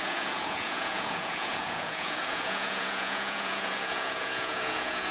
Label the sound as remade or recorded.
remade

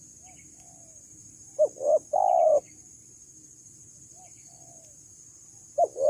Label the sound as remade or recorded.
recorded